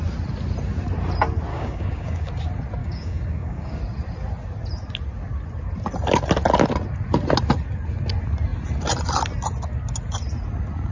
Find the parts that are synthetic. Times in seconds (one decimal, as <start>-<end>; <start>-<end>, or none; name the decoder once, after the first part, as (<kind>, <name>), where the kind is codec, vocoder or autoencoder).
1.5-2.3 (codec, DAC); 2.8-3.8